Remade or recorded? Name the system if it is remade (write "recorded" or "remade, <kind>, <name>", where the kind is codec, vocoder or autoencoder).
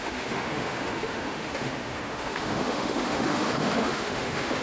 remade, autoencoder, DAC-VAE